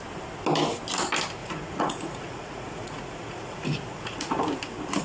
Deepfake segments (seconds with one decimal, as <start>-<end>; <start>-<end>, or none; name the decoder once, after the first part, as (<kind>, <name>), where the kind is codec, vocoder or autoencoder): 1.4-4.4 (vocoder, Vocos)